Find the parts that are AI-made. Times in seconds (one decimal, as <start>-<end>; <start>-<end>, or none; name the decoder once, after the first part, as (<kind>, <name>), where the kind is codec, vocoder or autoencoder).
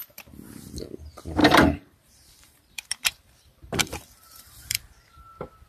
1.4-4.8 (vocoder, BigVGAN v2)